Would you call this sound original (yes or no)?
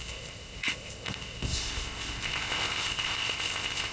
no